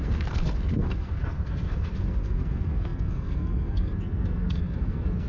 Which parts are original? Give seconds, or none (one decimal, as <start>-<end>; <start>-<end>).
none